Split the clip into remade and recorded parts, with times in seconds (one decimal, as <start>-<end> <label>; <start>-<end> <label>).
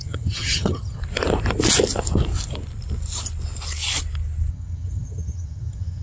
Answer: 0.0-1.0 remade; 1.0-4.5 recorded; 4.5-6.0 remade